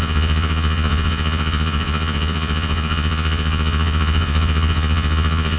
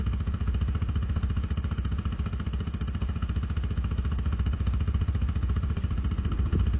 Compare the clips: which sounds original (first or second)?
second